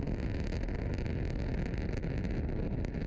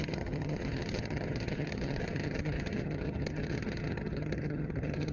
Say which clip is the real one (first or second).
first